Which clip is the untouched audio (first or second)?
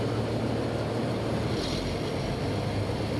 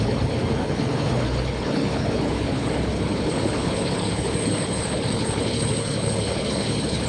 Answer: first